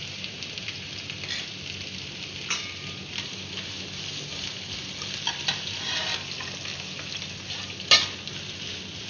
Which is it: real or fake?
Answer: real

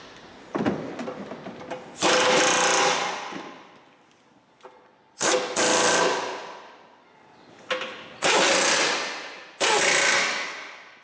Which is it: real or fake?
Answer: real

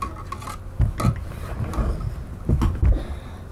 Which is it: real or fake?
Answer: real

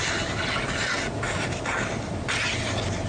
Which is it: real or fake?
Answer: real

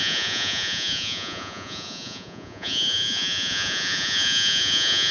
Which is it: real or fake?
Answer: fake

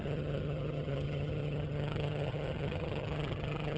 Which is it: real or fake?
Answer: fake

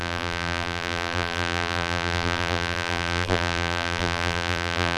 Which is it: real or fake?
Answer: fake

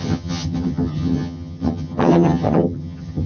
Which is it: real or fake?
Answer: fake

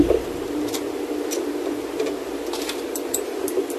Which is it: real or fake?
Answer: fake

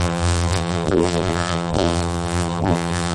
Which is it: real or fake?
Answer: fake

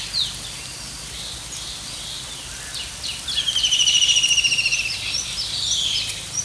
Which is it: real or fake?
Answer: real